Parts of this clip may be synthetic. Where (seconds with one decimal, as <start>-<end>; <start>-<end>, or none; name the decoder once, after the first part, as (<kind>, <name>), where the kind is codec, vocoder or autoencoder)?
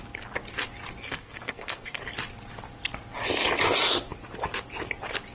1.0-2.0 (codec, SNAC)